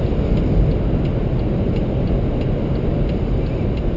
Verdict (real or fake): real